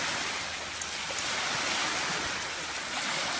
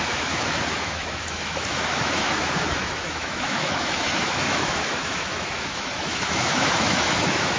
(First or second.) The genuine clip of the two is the first